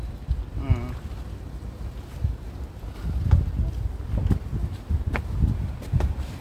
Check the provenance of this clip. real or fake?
real